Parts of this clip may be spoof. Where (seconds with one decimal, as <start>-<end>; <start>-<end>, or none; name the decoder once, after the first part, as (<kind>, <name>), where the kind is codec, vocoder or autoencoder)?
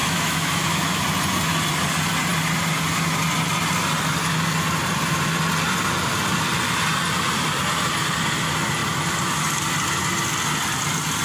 0.0-1.0 (autoencoder, DAC-VAE)